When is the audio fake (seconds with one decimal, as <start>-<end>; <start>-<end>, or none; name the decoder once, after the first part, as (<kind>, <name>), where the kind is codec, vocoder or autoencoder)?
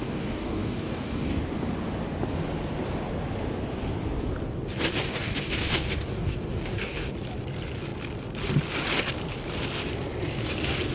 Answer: 0.0-1.4 (codec, DAC); 5.1-7.1